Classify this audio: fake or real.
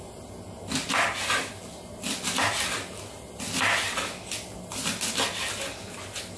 real